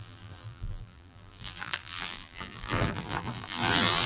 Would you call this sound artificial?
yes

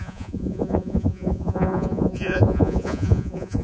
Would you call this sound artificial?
yes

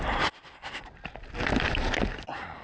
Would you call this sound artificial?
no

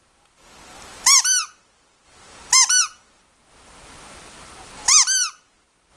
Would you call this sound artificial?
yes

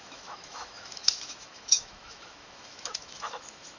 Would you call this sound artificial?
yes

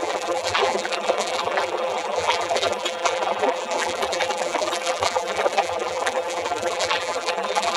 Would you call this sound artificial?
yes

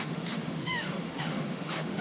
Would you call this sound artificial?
yes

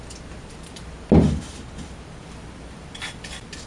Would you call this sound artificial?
no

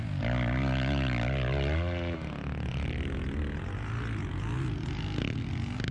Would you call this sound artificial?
no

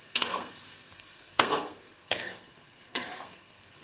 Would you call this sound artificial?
yes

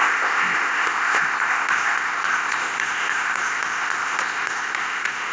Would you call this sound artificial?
yes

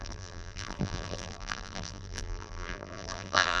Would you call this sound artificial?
yes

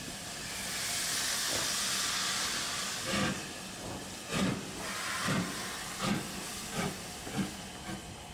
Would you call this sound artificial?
no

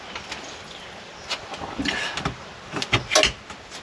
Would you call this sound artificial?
no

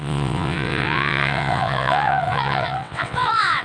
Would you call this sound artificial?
yes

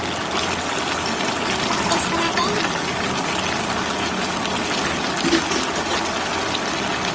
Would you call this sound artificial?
no